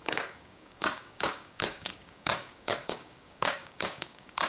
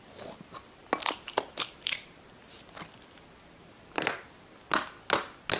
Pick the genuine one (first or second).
second